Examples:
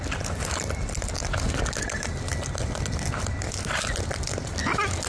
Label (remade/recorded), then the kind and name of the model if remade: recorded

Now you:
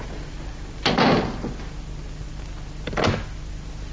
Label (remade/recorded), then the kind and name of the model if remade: recorded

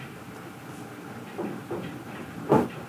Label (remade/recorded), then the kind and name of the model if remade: recorded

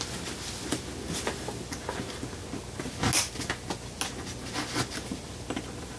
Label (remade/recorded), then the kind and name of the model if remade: recorded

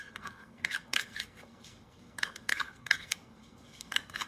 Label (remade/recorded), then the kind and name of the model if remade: remade, codec, SNAC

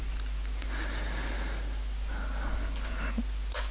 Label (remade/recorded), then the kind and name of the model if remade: recorded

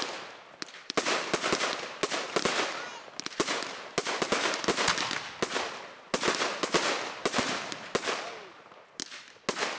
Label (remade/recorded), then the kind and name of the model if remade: recorded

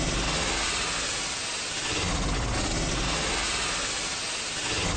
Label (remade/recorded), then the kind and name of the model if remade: recorded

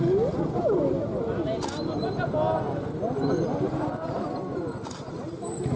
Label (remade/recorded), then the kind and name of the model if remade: recorded